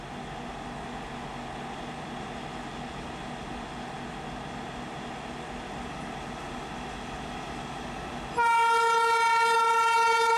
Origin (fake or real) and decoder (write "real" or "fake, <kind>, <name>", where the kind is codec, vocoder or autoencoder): real